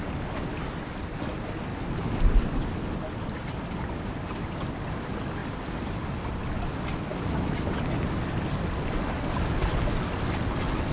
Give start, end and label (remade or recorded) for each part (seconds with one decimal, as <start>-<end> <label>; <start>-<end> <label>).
0.0-10.9 recorded